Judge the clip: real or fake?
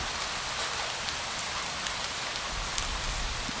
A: real